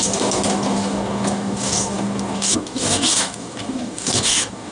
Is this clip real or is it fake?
fake